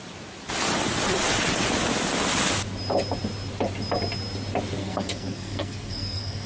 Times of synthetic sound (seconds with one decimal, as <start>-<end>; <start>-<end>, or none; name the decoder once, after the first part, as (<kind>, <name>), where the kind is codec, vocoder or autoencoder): 4.8-6.5 (codec, SNAC)